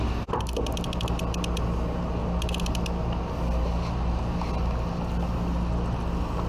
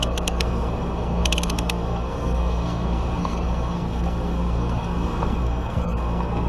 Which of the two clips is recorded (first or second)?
first